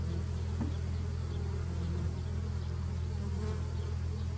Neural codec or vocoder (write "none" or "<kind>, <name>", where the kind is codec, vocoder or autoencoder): none